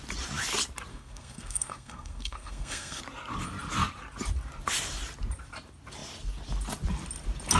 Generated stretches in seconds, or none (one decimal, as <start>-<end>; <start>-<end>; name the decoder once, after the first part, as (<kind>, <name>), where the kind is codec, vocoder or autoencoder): 0.9-3.0 (codec, SNAC)